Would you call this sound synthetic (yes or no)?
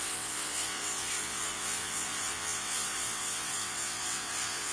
yes